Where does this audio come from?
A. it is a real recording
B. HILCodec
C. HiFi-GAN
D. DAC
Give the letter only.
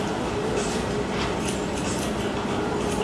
A